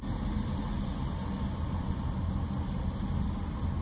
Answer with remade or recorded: recorded